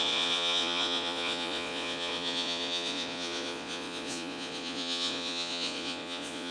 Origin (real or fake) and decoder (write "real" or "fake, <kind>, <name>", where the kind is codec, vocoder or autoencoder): fake, vocoder, Vocos